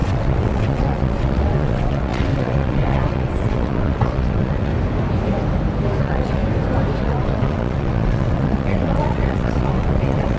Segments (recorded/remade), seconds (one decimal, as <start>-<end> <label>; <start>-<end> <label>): 0.0-4.7 remade; 4.7-6.0 recorded; 6.0-6.4 remade; 6.4-7.0 recorded; 7.0-10.4 remade